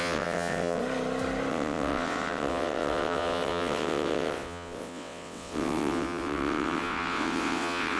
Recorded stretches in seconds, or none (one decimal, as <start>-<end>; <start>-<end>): 0.8-1.5